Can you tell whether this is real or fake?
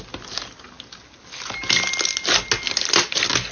real